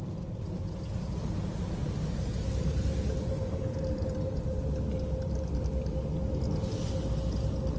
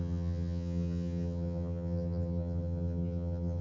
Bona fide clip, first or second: first